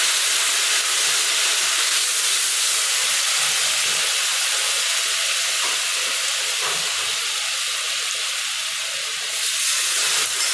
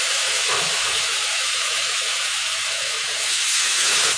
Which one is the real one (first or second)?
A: first